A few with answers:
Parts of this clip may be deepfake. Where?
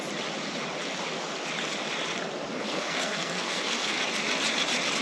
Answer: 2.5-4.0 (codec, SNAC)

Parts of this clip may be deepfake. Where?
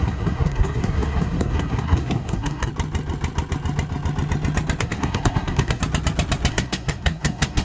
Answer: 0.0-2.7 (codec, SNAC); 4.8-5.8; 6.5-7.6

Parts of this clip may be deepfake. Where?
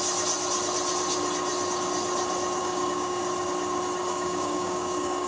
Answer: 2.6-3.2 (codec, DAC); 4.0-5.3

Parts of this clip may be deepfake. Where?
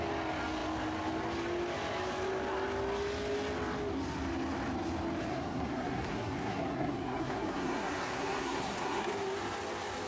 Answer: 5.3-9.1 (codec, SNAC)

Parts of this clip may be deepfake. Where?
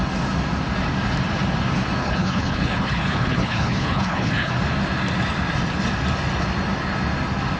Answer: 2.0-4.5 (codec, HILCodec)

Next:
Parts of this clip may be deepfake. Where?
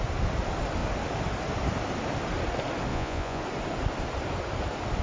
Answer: 2.9-3.4 (vocoder, Vocos)